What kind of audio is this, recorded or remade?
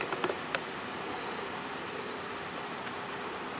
recorded